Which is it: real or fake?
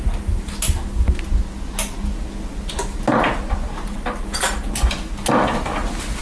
real